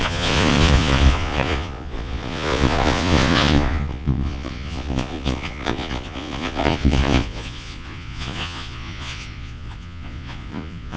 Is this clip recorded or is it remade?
remade